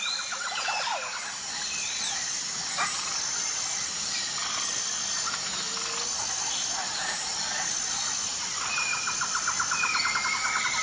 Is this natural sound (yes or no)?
yes